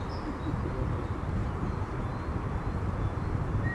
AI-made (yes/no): no